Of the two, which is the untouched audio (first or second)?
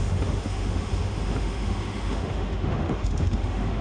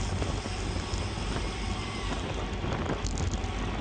second